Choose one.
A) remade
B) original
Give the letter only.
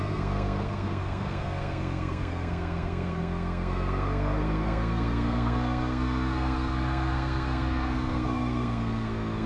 A